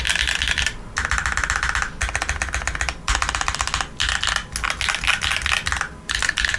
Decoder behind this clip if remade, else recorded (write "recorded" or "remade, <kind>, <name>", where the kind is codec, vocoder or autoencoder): recorded